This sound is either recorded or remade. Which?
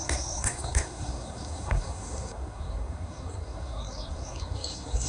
remade